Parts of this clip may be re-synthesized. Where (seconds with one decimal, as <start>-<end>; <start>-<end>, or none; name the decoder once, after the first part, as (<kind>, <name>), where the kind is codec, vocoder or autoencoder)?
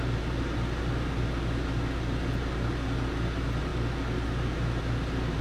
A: none